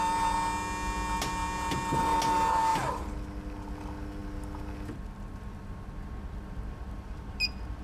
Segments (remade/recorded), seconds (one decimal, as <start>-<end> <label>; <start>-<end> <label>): 0.0-7.8 recorded